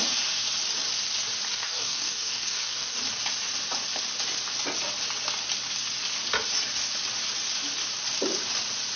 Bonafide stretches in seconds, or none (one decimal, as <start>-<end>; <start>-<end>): 0.0-1.5; 3.0-9.0